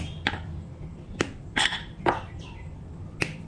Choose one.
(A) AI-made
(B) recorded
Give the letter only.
A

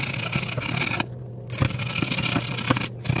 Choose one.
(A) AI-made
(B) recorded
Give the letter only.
B